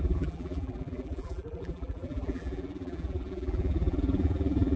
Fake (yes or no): yes